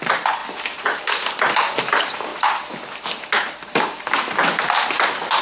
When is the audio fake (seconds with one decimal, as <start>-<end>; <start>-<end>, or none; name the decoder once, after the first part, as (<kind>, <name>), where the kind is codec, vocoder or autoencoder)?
none